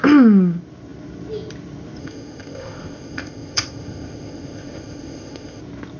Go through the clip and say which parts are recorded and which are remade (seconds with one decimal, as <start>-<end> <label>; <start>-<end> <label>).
0.0-2.0 recorded; 2.0-5.6 remade; 5.6-6.0 recorded